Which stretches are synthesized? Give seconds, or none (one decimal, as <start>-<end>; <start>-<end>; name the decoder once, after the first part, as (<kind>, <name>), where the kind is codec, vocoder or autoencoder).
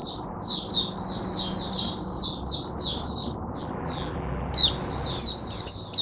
3.6-4.5 (vocoder, BigVGAN v2)